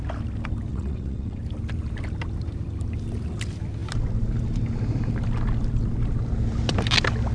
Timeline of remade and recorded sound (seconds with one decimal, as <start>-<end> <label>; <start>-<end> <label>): 0.0-0.7 recorded; 0.7-1.4 remade; 1.4-7.3 recorded